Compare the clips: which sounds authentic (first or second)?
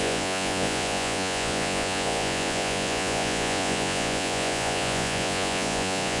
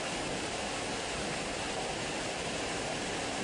second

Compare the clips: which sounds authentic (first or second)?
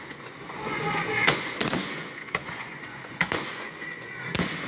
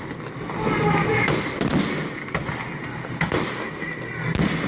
second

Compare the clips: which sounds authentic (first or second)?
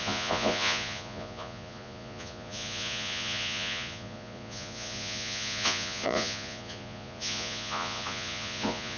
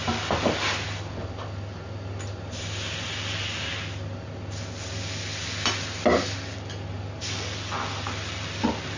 second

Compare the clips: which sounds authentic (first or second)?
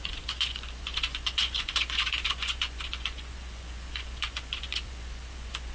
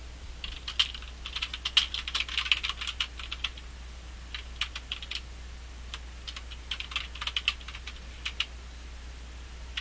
second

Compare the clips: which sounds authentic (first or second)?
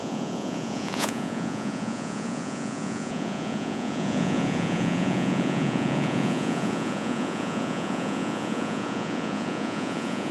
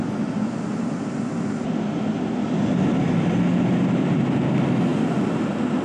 second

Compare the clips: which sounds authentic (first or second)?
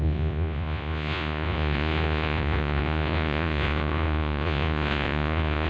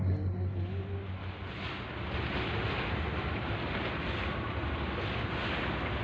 second